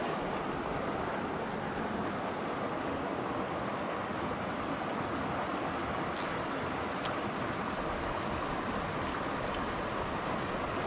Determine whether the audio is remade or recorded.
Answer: recorded